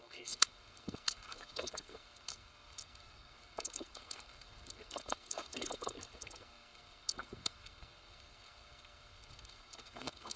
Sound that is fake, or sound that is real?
fake